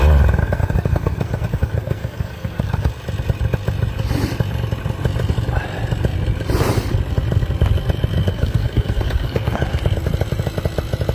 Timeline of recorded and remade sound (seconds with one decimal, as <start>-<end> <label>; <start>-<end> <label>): 0.0-0.4 recorded; 0.4-2.9 remade; 2.9-8.3 recorded; 8.3-9.6 remade; 9.6-11.1 recorded